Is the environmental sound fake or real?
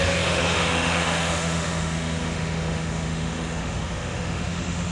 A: fake